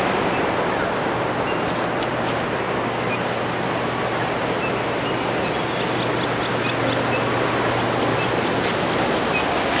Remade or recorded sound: recorded